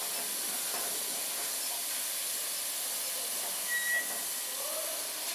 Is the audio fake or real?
real